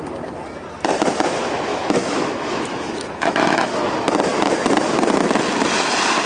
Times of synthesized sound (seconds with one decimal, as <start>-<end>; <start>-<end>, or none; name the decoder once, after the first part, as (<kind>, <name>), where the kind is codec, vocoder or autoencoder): 1.7-3.7 (autoencoder, DAC-VAE)